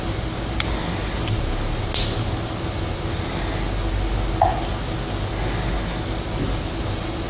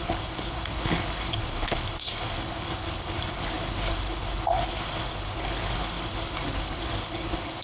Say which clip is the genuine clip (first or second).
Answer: first